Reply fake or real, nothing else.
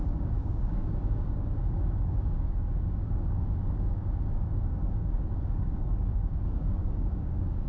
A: fake